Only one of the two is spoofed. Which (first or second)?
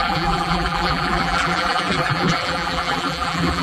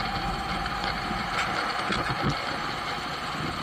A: first